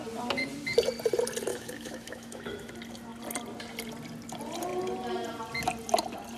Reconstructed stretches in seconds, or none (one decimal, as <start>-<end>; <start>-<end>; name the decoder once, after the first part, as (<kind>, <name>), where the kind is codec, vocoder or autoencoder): 1.5-2.7 (autoencoder, DAC-VAE)